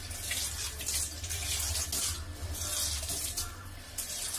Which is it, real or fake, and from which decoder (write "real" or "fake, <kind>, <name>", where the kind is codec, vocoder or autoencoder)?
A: real